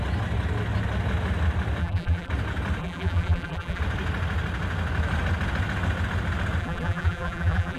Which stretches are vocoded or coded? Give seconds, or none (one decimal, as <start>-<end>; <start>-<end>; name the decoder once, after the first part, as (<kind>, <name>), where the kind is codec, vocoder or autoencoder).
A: 1.8-2.3 (vocoder, BigVGAN v2); 2.8-3.8; 6.6-7.8